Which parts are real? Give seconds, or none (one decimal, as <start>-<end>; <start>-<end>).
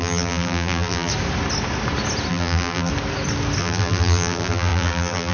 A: 1.1-2.3; 2.9-3.6